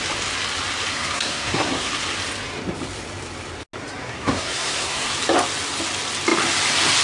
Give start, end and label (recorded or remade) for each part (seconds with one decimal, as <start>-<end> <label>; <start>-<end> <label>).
0.0-0.9 recorded; 0.9-1.9 remade; 1.9-4.0 recorded; 4.0-5.1 remade; 5.1-7.0 recorded